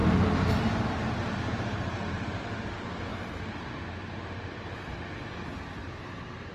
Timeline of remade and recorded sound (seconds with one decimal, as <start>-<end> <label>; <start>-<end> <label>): 0.0-2.4 remade; 2.4-3.1 recorded; 3.1-4.8 remade; 4.8-5.5 recorded; 5.5-6.0 remade; 6.0-6.5 recorded